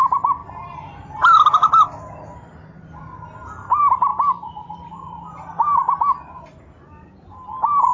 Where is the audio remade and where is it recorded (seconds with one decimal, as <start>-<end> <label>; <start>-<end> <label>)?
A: 0.0-4.1 recorded; 4.1-4.7 remade; 4.7-7.9 recorded

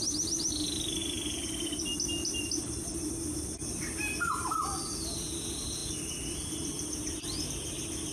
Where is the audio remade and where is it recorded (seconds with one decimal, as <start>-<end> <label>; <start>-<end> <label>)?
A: 0.0-1.0 recorded; 1.0-2.4 remade; 2.4-5.8 recorded; 5.8-7.5 remade; 7.5-8.1 recorded

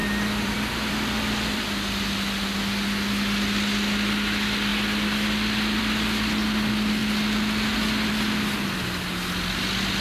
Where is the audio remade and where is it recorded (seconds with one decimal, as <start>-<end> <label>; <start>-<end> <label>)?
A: 0.0-1.6 remade; 1.6-10.0 recorded

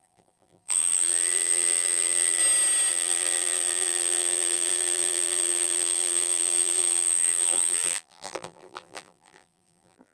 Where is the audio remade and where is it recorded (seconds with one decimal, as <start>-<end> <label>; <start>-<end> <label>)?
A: 0.0-2.4 remade; 2.4-2.9 recorded; 2.9-10.1 remade

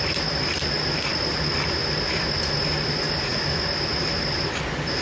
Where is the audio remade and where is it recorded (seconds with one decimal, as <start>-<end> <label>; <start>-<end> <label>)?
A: 0.0-5.0 recorded